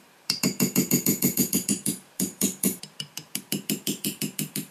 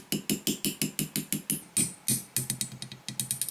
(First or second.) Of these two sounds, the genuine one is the second